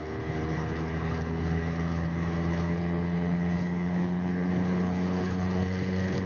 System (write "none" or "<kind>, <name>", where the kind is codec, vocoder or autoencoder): codec, HILCodec